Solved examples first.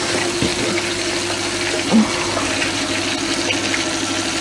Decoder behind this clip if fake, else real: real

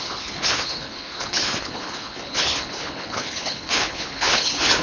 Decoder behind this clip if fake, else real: fake, codec, HILCodec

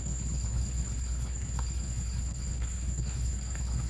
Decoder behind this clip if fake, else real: fake, codec, HILCodec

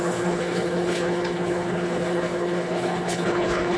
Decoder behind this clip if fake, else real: fake, codec, HILCodec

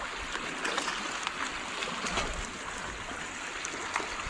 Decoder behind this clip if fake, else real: real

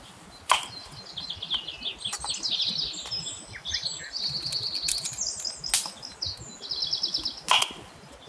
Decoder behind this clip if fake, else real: real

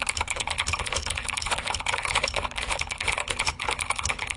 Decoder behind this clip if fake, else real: fake, codec, HILCodec